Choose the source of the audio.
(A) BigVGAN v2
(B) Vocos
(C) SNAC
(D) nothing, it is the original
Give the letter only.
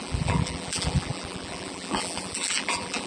A